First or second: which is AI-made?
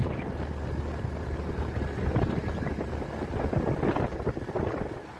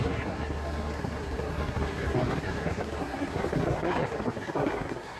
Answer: second